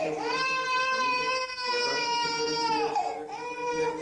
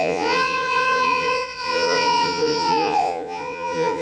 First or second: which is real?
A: first